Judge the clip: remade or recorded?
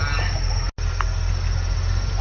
recorded